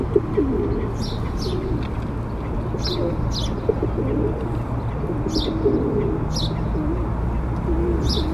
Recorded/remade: recorded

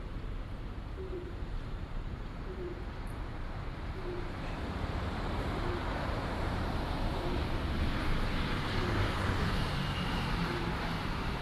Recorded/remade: remade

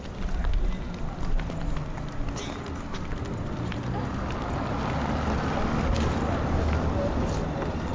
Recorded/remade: recorded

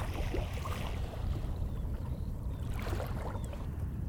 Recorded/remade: remade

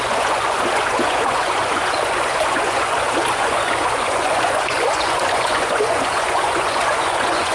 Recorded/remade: remade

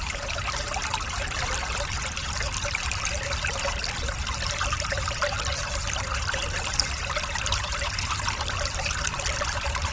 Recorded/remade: recorded